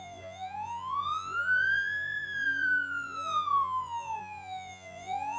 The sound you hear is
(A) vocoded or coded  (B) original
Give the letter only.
A